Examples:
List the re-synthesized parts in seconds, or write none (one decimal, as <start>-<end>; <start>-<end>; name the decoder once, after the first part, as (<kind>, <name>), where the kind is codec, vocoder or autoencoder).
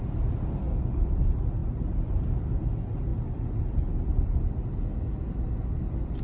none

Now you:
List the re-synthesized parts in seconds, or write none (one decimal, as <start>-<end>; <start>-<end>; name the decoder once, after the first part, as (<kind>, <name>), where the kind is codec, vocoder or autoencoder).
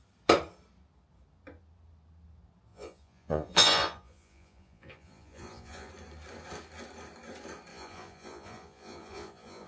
2.7-5.9 (vocoder, Vocos); 7.7-9.7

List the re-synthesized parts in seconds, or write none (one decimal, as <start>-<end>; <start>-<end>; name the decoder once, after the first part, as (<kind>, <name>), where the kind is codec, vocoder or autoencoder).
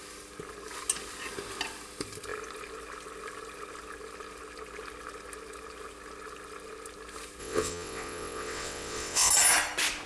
7.4-9.3 (vocoder, WaveNeXt)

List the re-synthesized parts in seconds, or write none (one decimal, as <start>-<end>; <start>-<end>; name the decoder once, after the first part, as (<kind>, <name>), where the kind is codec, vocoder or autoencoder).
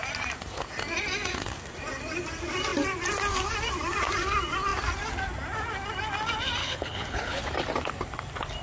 6.6-7.4 (codec, HILCodec)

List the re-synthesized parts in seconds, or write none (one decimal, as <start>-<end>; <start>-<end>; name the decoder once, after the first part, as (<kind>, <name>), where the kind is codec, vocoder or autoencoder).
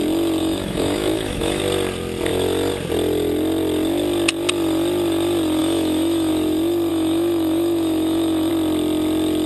0.4-1.6 (autoencoder, DAC-VAE); 5.6-6.3; 6.9-8.5